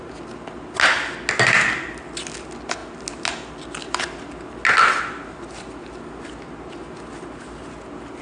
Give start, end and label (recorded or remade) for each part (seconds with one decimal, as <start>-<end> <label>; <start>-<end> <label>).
0.0-8.2 recorded